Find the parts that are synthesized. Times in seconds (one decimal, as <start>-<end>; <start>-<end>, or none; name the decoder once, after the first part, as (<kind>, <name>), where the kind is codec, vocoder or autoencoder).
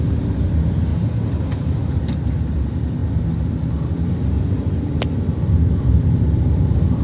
0.0-3.0 (vocoder, BigVGAN v2); 5.9-7.0